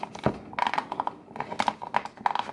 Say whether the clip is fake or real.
real